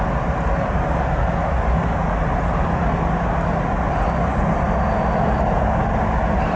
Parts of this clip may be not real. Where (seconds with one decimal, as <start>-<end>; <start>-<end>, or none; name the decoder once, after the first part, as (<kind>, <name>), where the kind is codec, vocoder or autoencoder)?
none